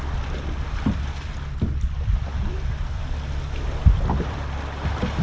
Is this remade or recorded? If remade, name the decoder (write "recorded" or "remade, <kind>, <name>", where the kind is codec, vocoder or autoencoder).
recorded